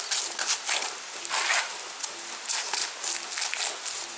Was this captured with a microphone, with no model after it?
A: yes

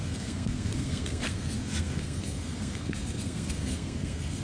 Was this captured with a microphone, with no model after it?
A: no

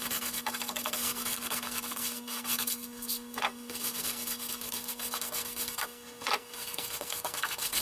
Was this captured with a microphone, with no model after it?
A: no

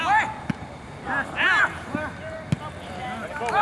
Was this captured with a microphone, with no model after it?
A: yes